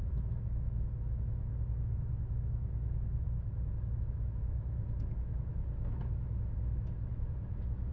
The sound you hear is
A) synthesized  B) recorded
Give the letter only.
A